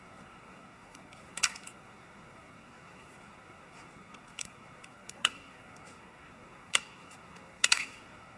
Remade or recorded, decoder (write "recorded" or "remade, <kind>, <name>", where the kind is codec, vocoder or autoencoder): remade, codec, SNAC